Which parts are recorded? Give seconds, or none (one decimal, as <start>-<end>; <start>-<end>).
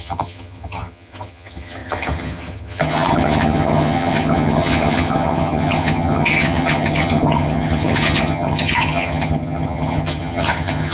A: none